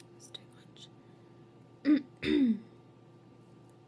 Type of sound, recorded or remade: recorded